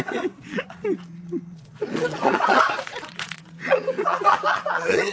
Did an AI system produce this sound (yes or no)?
yes